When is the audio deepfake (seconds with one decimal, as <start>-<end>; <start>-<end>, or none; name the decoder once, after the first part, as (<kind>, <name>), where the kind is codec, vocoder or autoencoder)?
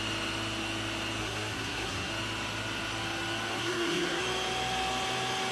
1.2-2.1 (codec, SNAC); 3.5-4.2